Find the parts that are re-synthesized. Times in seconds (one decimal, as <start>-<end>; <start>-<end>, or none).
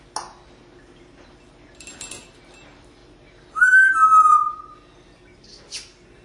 none